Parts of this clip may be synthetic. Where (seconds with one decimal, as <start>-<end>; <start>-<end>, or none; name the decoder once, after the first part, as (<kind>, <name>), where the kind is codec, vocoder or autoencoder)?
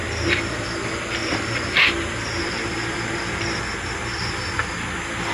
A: 0.0-0.6 (vocoder, BigVGAN v2); 1.2-3.6